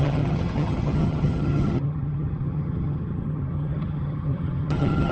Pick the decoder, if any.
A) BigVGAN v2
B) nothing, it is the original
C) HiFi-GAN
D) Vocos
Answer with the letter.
C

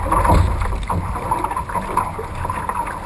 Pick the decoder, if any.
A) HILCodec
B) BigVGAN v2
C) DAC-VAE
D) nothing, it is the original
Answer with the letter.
D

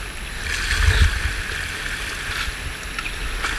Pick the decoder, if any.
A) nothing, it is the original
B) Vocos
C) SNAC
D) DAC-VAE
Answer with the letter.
A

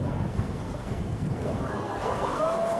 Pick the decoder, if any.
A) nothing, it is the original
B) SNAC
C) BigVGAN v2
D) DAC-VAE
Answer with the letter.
B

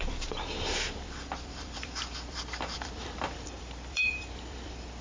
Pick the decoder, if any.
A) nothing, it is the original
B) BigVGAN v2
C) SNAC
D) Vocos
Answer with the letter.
B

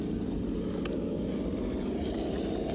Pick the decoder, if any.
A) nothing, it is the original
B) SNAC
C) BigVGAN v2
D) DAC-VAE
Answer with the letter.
A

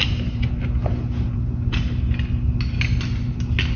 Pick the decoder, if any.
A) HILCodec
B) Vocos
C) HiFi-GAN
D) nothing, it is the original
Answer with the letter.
D